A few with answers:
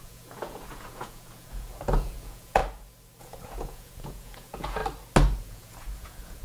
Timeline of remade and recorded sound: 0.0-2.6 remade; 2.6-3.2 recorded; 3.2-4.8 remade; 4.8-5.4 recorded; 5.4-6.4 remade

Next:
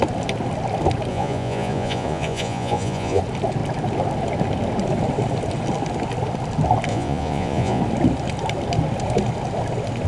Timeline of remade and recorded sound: 0.0-1.1 recorded; 1.1-3.2 remade; 3.2-6.9 recorded; 6.9-7.8 remade; 7.8-10.1 recorded

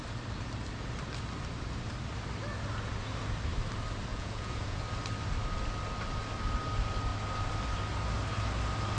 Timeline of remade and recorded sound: 0.0-4.1 recorded; 4.1-4.8 remade; 4.8-9.0 recorded

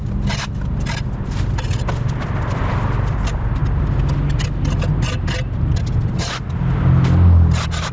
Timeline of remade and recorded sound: 0.0-7.9 recorded

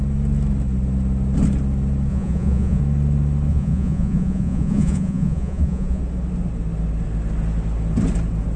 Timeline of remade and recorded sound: 0.0-2.1 recorded; 2.1-2.8 remade; 2.8-3.5 recorded; 3.5-6.0 remade; 6.0-8.6 recorded

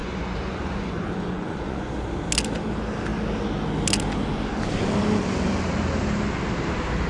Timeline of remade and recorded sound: 0.0-1.9 remade; 1.9-7.1 recorded

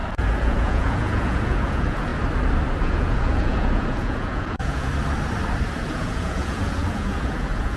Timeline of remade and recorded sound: 0.0-2.1 remade; 2.1-2.8 recorded; 2.8-4.9 remade; 4.9-5.8 recorded; 5.8-7.8 remade